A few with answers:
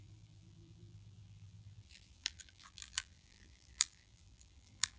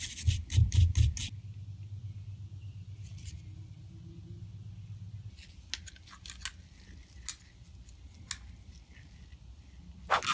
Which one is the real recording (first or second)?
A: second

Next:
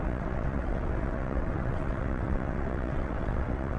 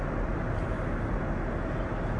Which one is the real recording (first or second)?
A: second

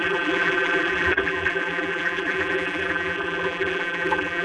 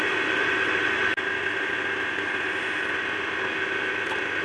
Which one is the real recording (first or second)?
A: second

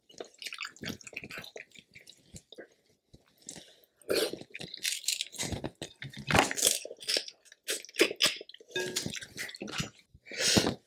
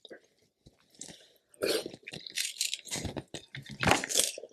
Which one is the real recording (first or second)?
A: first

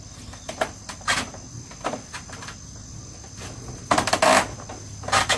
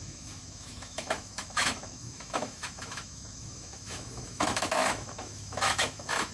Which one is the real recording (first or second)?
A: first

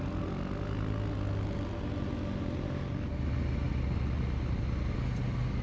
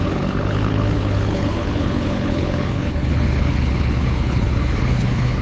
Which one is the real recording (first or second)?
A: first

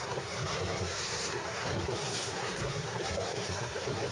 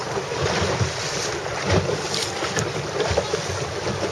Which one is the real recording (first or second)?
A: second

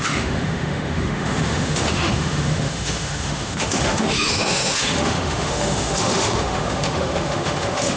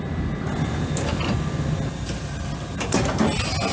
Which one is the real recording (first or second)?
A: second